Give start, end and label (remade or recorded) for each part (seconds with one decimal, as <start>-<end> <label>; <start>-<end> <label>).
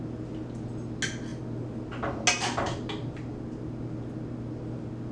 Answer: 0.0-5.1 recorded